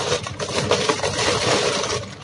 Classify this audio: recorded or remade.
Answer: recorded